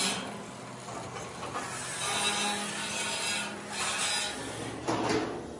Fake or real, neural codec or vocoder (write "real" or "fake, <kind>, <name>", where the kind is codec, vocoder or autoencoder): real